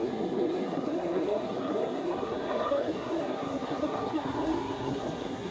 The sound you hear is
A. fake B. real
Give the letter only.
A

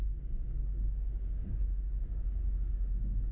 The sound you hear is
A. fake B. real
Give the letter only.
B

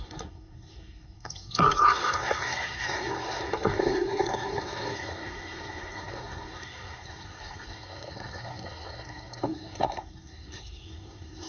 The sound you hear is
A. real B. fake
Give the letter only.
B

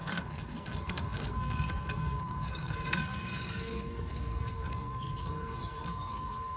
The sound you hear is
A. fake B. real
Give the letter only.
A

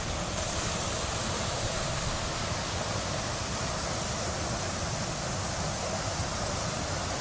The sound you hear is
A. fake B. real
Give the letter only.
B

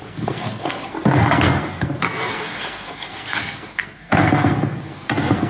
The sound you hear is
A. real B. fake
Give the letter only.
B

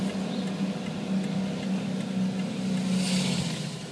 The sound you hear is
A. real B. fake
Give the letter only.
A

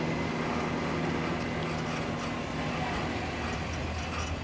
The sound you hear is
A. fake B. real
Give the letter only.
B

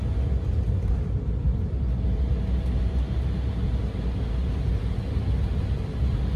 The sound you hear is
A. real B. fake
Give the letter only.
A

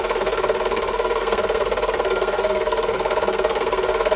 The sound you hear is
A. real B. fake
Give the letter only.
B